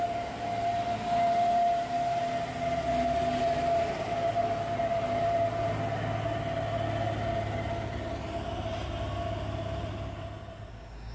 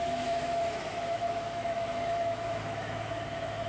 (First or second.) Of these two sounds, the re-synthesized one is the second